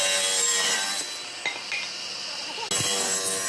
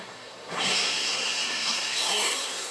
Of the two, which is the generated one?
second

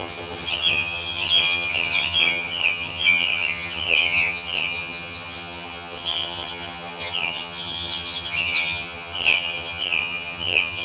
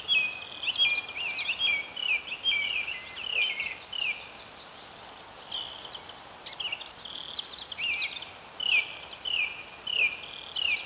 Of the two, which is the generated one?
first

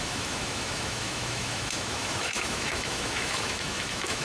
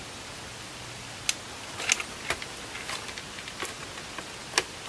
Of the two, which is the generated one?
first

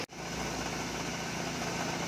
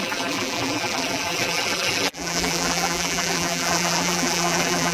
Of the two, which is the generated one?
second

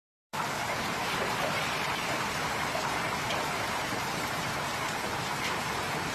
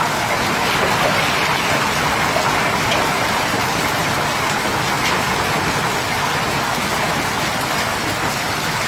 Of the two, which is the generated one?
first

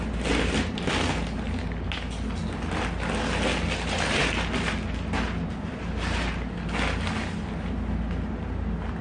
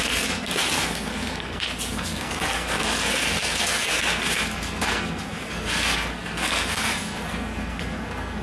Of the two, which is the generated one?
second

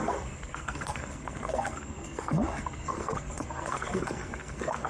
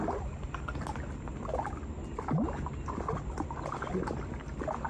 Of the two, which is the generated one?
first